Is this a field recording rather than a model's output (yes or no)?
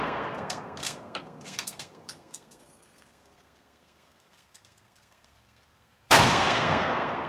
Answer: no